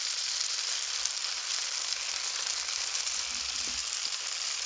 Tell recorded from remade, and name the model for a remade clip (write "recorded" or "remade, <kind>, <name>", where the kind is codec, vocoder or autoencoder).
remade, vocoder, BigVGAN v2